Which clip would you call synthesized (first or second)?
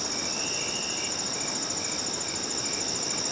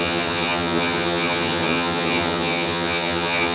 second